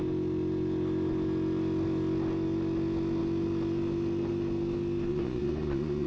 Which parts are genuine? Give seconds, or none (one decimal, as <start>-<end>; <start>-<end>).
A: 0.0-5.1